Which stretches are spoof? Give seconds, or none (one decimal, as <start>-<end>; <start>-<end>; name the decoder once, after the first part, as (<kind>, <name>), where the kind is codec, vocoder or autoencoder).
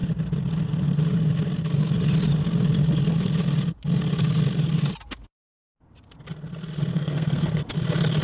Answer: 6.9-7.6 (codec, SNAC)